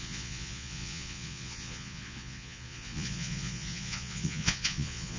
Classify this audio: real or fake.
fake